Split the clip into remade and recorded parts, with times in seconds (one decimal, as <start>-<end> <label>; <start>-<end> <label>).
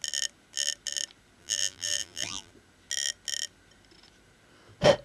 0.0-1.4 recorded; 1.4-2.5 remade; 2.5-5.0 recorded